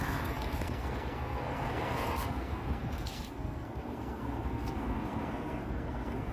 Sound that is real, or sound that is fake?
fake